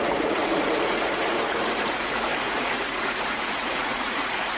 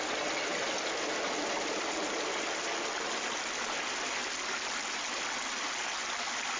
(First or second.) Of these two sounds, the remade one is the first